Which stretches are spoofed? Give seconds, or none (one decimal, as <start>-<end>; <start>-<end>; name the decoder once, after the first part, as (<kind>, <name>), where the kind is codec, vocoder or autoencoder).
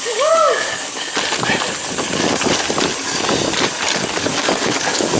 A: 0.0-1.1 (codec, DAC); 4.2-5.2